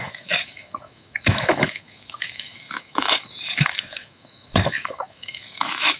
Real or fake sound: fake